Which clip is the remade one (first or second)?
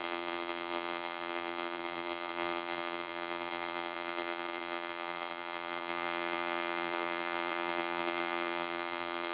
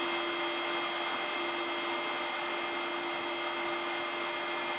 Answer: first